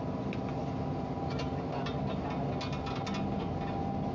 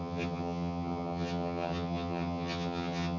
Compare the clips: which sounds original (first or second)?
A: first